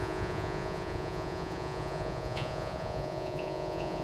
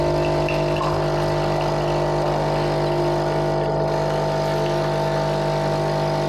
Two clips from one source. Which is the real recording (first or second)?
second